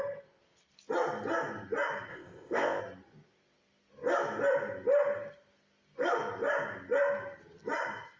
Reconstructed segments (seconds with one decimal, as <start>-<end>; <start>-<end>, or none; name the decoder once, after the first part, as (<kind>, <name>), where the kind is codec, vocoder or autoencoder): 2.1-2.8 (codec, ZipCodec)